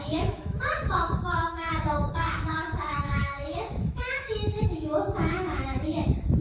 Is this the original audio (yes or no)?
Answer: no